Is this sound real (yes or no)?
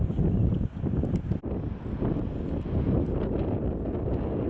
yes